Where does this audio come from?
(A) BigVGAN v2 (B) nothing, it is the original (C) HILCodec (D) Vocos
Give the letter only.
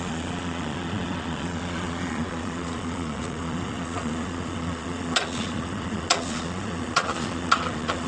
D